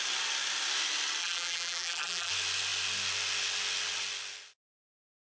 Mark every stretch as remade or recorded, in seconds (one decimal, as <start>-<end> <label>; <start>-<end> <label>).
0.0-1.2 recorded; 1.2-2.3 remade; 2.3-5.2 recorded